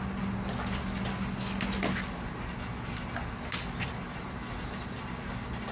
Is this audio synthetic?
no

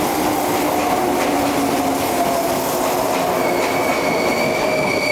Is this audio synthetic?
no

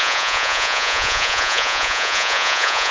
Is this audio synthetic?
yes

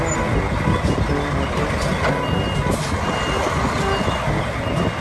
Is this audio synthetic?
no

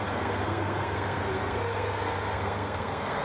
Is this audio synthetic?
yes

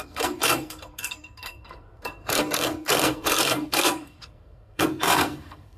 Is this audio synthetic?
yes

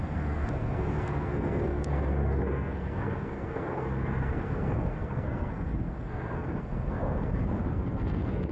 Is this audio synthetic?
yes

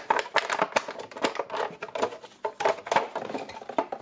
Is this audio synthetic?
no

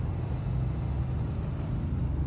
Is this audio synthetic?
no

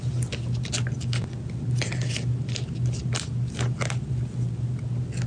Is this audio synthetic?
no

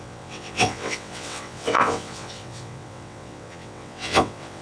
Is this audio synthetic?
yes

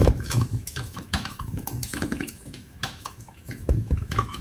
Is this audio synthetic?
yes